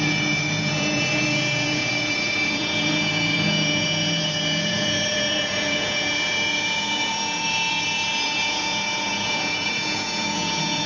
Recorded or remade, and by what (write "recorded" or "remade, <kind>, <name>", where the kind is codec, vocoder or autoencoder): remade, vocoder, Vocos